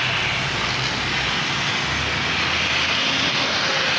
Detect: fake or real real